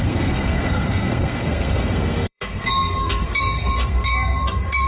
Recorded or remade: remade